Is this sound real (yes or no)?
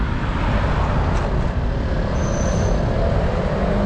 yes